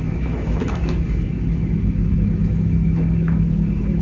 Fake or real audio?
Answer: fake